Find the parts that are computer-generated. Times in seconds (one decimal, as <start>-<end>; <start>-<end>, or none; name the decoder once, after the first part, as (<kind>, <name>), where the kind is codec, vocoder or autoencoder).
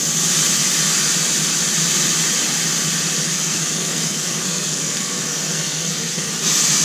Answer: 3.2-6.3 (codec, SNAC)